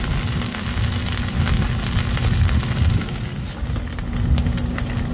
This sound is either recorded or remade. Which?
recorded